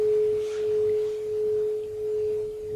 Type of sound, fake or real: real